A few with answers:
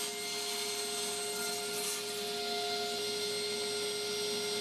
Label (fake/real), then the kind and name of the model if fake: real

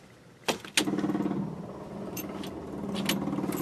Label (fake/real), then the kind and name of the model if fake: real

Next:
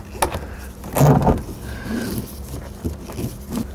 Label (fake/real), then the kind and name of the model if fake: real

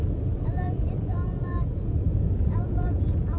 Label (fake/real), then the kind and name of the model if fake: fake, vocoder, Vocos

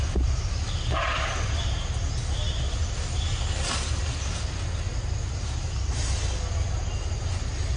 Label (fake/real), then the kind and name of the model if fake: real